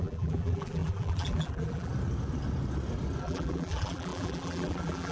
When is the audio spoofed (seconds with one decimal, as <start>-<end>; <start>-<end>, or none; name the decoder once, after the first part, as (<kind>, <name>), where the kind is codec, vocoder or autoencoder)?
0.0-1.9 (vocoder, BigVGAN v2); 3.2-5.1